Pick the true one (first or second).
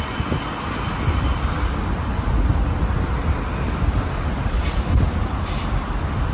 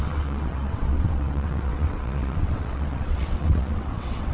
first